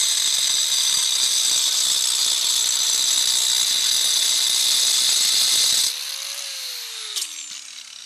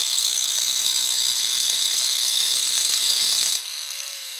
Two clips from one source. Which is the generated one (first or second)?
second